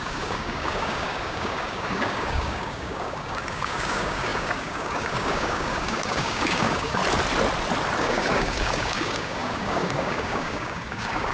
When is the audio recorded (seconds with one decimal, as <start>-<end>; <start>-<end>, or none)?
7.0-8.0